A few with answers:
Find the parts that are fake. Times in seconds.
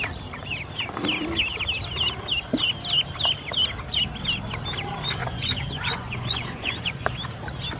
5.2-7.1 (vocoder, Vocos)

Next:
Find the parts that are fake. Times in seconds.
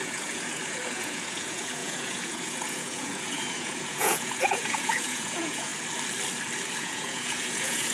0.0-5.7 (vocoder, Vocos); 6.8-7.9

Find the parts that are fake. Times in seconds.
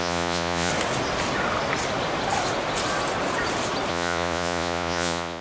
0.0-0.7 (vocoder, Vocos); 3.9-5.4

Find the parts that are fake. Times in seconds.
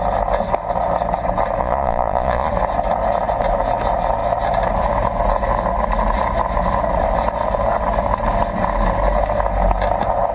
1.6-2.5 (vocoder, Vocos)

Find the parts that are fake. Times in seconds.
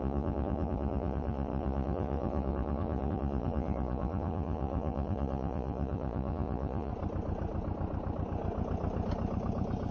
0.0-6.9 (vocoder, Vocos)